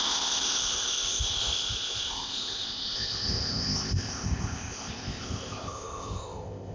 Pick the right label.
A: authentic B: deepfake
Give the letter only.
B